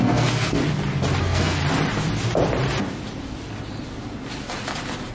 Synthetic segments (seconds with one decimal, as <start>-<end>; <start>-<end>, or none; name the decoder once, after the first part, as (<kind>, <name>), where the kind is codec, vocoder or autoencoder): 0.0-0.6 (codec, SNAC); 1.2-1.6